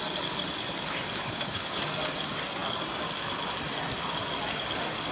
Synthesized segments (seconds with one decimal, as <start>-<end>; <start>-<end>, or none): 1.2-1.8